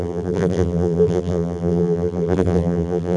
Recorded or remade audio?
remade